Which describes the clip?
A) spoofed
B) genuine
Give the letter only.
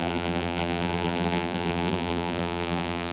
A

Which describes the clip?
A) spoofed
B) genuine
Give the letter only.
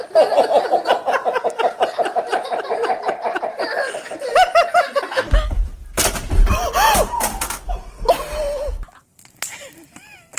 A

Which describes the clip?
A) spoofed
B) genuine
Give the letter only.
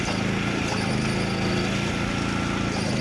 B